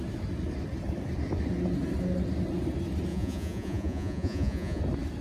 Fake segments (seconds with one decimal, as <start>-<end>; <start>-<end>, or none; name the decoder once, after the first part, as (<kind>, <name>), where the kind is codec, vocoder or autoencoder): 3.1-4.8 (vocoder, Vocos)